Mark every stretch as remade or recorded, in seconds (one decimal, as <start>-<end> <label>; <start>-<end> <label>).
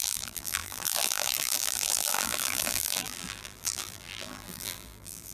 0.0-5.3 remade